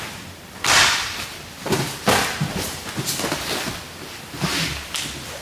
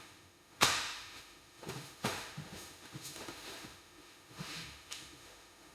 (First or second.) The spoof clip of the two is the second